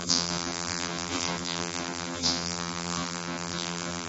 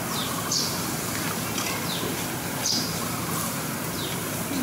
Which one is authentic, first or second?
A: second